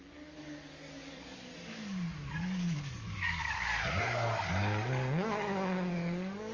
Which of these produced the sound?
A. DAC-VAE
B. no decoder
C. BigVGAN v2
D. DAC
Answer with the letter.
D